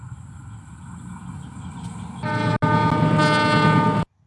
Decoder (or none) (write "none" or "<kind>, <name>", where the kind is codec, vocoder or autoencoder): none